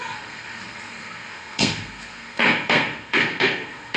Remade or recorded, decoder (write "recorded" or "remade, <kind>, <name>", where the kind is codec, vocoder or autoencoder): remade, codec, SNAC